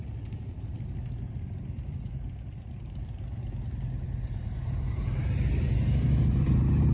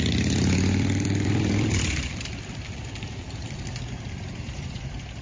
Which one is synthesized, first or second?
second